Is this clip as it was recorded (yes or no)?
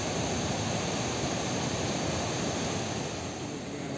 yes